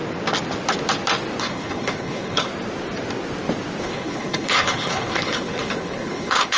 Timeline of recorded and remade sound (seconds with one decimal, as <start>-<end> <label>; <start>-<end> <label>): 0.0-1.4 recorded; 1.4-2.5 remade; 2.5-3.8 recorded; 3.8-6.6 remade